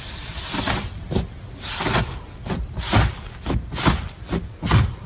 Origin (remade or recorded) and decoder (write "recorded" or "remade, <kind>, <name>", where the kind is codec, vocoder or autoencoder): recorded